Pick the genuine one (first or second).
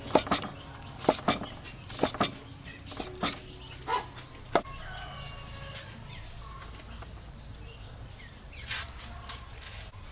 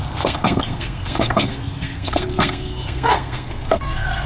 first